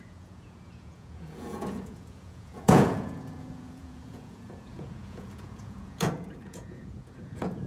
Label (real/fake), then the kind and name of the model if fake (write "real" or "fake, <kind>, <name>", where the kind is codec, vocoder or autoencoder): fake, vocoder, Vocos